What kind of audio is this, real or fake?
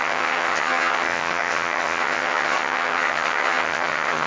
fake